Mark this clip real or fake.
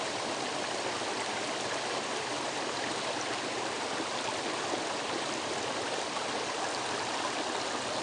real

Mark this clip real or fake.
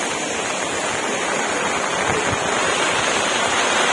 real